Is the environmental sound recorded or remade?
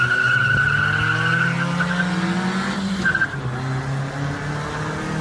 recorded